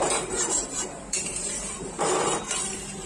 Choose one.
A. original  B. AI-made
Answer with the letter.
B